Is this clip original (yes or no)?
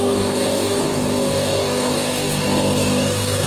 no